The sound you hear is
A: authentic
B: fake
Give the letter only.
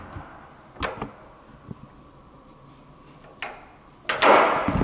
A